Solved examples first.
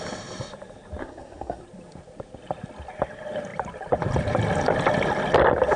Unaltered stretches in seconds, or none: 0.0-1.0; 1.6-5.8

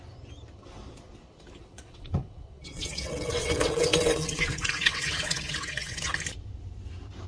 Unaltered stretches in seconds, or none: 0.0-1.6; 6.0-7.3